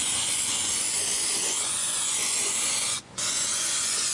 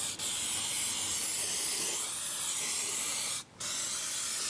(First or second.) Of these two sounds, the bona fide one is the second